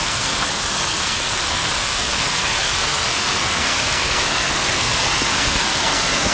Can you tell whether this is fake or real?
fake